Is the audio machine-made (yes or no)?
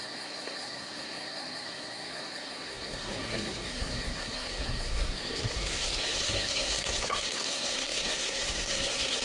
yes